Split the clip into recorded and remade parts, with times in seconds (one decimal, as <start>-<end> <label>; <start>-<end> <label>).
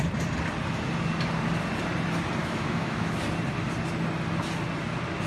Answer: 0.0-2.4 recorded; 2.4-3.2 remade; 3.2-5.3 recorded